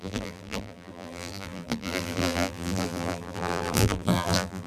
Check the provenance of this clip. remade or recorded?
remade